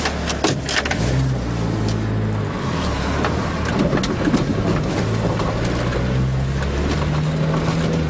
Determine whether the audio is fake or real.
real